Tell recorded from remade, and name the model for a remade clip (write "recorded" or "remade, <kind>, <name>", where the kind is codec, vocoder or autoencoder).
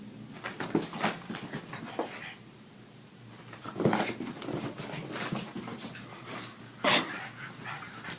recorded